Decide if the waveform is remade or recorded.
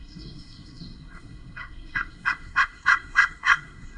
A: remade